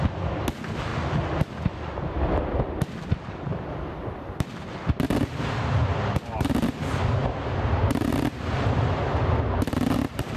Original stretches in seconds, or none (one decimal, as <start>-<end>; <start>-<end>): 0.0-10.4